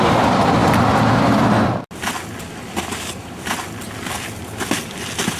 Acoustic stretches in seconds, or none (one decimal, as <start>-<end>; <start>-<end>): 0.0-5.4